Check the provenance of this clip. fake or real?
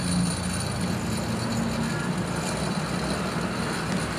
real